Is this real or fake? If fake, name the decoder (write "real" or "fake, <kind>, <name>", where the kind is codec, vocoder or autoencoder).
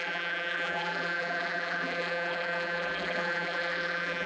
fake, vocoder, BigVGAN v2